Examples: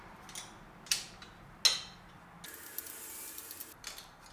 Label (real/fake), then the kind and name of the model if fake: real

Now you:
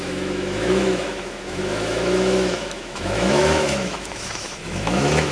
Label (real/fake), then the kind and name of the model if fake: fake, autoencoder, DAC-VAE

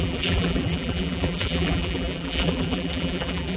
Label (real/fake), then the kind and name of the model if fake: fake, vocoder, BigVGAN v2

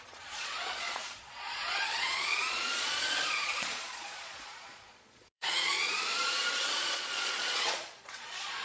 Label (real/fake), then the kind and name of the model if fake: fake, vocoder, Vocos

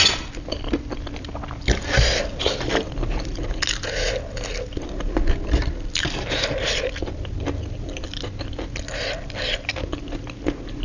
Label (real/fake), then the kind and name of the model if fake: real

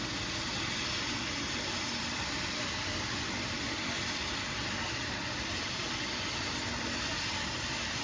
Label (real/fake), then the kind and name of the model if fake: real